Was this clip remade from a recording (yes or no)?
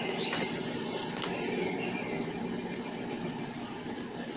no